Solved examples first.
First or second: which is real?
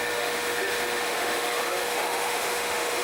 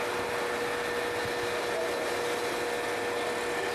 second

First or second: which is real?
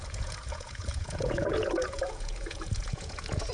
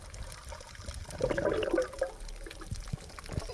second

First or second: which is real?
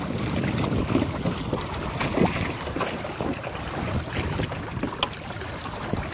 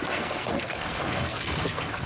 first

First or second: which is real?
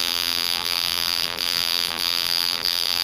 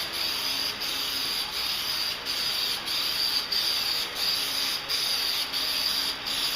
second